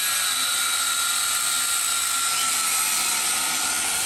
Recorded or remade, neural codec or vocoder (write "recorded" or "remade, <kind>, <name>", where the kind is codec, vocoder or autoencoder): recorded